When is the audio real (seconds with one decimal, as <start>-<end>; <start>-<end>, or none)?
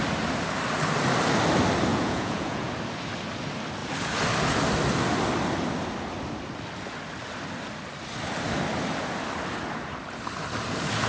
0.0-1.9; 2.7-11.1